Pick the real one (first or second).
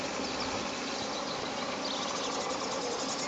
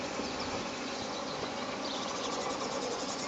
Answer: first